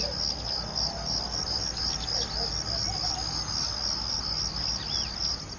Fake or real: real